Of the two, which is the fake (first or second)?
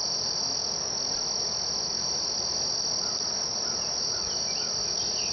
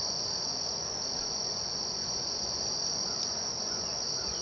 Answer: second